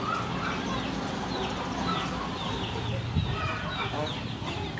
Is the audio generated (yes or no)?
no